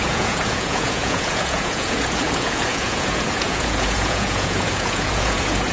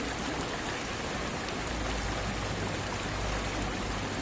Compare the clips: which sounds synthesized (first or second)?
first